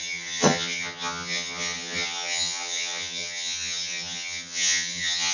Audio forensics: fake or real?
fake